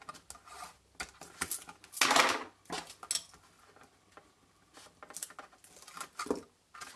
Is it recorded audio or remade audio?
recorded